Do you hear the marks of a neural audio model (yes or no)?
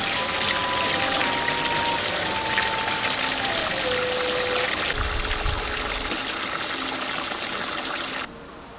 no